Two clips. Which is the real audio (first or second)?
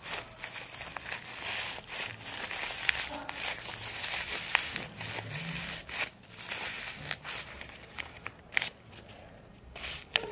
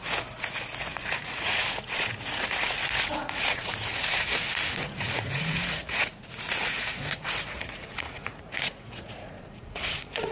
first